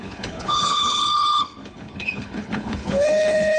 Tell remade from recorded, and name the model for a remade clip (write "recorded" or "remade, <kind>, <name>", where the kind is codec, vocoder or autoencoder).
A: remade, codec, HILCodec